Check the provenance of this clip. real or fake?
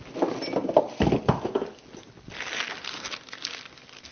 real